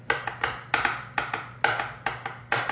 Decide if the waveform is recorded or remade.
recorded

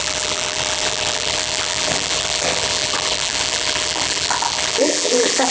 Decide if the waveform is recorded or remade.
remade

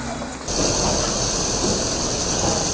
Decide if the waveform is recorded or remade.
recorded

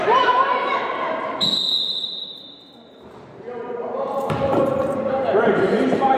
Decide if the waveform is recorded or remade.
remade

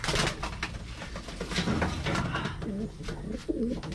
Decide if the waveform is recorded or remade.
recorded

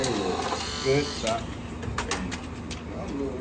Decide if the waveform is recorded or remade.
recorded